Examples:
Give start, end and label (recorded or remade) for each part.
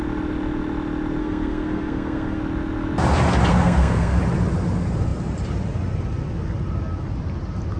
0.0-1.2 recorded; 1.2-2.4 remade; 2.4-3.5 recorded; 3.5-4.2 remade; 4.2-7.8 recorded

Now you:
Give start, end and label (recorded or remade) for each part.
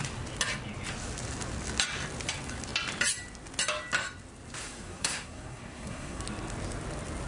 0.0-4.6 recorded; 4.6-6.2 remade; 6.2-7.3 recorded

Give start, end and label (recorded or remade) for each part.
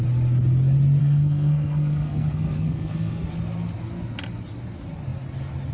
0.0-1.0 recorded; 1.0-3.3 remade; 3.3-5.7 recorded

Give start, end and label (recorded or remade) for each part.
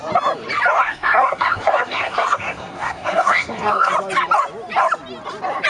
0.0-0.8 recorded; 0.8-3.9 remade; 3.9-5.7 recorded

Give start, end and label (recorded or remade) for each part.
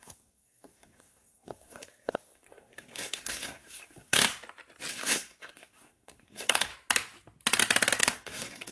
0.0-4.3 remade; 4.3-4.9 recorded; 4.9-6.7 remade; 6.7-8.0 recorded; 8.0-8.7 remade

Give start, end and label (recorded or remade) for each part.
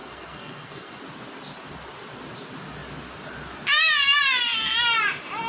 0.0-1.0 remade; 1.0-5.5 recorded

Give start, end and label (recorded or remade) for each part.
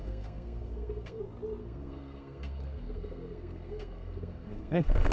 0.0-1.2 remade; 1.2-1.6 recorded; 1.6-5.1 remade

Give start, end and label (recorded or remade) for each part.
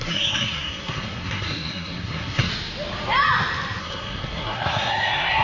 0.0-2.5 remade; 2.5-3.8 recorded; 3.8-5.4 remade